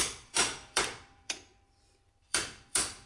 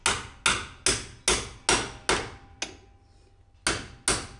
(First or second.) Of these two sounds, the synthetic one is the first